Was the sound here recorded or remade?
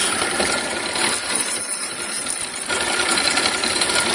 recorded